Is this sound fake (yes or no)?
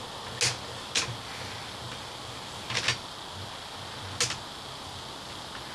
no